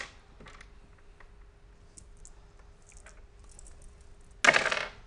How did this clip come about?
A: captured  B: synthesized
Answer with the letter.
A